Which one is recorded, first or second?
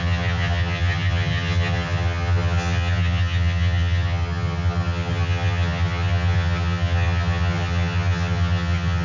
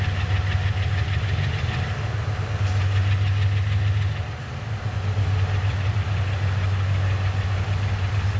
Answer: second